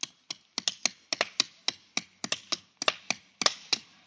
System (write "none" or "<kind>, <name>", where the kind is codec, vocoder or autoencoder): none